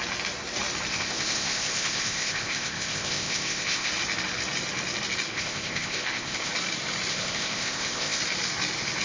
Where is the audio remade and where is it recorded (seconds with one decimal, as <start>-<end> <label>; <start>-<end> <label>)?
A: 0.0-0.9 recorded; 0.9-3.9 remade; 3.9-5.3 recorded; 5.3-6.5 remade; 6.5-7.1 recorded; 7.1-8.2 remade; 8.2-9.0 recorded